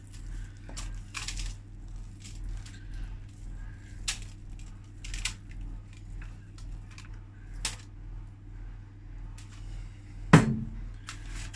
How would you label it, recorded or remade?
recorded